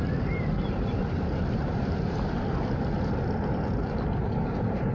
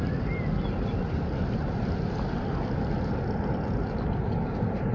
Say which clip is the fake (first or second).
first